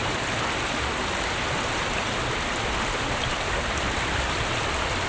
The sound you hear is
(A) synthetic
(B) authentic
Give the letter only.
B